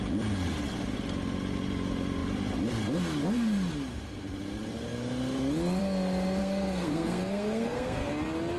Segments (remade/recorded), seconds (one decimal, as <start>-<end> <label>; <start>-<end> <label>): 0.0-6.4 recorded; 6.4-8.1 remade; 8.1-8.6 recorded